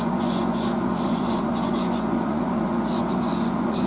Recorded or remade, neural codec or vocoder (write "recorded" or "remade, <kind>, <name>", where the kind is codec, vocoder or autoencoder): remade, vocoder, Vocos